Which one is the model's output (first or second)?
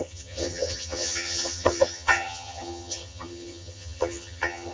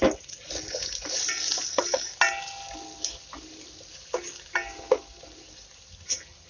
first